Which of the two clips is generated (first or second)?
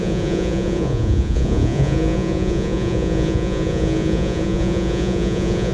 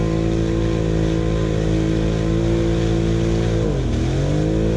first